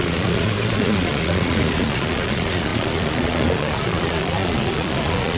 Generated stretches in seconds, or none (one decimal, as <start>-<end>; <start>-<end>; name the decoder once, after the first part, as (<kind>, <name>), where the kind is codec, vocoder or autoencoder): 0.0-5.4 (vocoder, Vocos)